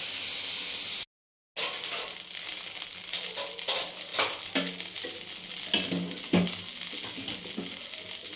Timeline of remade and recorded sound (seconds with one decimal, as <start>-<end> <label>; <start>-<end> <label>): 0.0-8.4 recorded